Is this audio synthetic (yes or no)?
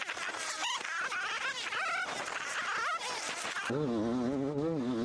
no